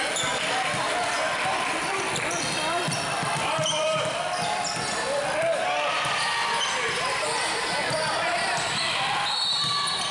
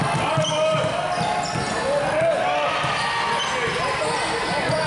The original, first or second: second